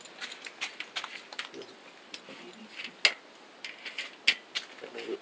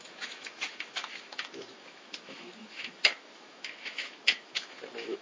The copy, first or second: second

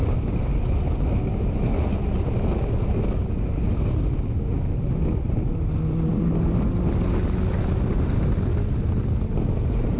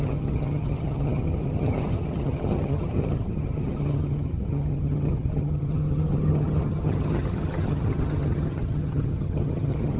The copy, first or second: second